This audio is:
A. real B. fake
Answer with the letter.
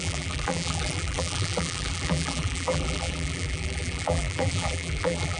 B